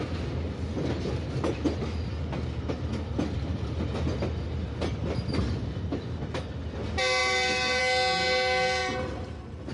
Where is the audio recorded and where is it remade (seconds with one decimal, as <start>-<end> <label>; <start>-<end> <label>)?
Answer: 0.0-7.2 recorded; 7.2-7.8 remade; 7.8-8.8 recorded; 8.8-9.7 remade

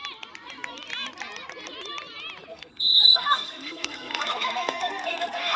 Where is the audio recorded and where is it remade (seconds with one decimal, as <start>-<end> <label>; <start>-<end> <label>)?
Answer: 0.0-2.5 recorded; 2.5-5.6 remade

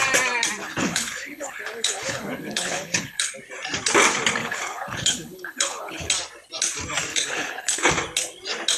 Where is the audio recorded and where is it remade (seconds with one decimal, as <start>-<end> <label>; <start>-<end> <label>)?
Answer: 0.0-0.6 recorded; 0.6-3.3 remade; 3.3-4.4 recorded; 4.4-6.1 remade; 6.1-7.1 recorded; 7.1-7.9 remade; 7.9-8.8 recorded

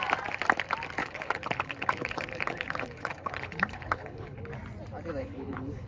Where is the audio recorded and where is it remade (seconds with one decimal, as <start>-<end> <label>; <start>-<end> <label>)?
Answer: 0.0-1.0 recorded; 1.0-4.5 remade; 4.5-5.2 recorded; 5.2-5.9 remade

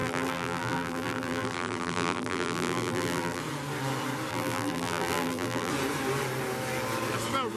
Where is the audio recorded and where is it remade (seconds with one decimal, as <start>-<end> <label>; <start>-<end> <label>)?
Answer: 0.0-3.4 remade; 3.4-4.3 recorded; 4.3-5.7 remade; 5.7-7.6 recorded

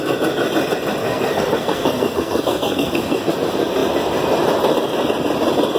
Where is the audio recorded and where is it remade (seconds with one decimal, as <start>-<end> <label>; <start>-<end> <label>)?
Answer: 0.0-1.0 recorded; 1.0-3.3 remade; 3.3-5.8 recorded

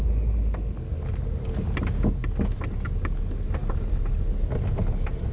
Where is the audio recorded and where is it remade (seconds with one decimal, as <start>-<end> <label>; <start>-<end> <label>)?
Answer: 0.0-5.3 recorded

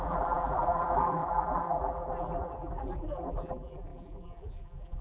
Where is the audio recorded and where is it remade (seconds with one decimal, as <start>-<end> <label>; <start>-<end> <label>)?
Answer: 0.0-5.0 remade